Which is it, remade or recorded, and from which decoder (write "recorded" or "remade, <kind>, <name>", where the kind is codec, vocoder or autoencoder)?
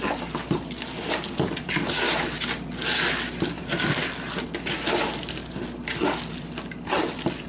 recorded